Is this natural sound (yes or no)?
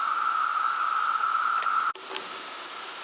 yes